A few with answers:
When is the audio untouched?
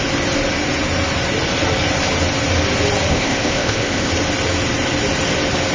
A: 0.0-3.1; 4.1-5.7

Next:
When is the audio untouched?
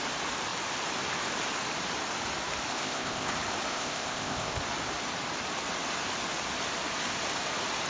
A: 0.0-2.7; 3.3-3.7; 4.6-7.9